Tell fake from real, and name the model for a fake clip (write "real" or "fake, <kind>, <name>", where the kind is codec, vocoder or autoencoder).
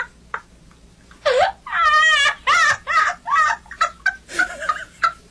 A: real